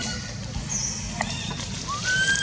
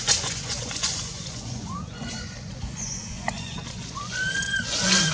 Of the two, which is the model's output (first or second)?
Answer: second